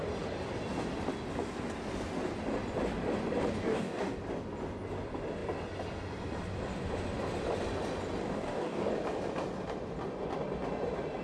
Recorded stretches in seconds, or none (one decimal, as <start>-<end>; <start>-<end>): 0.0-3.6; 4.2-8.2; 8.9-11.2